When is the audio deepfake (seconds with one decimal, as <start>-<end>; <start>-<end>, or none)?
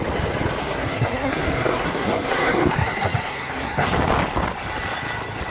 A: 0.6-3.9